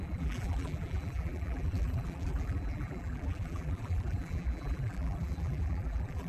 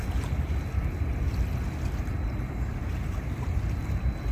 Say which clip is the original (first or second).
second